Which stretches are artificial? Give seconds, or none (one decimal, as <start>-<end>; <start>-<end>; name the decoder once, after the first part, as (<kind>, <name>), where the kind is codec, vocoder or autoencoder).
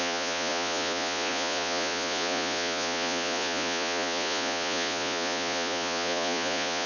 0.0-6.9 (vocoder, Vocos)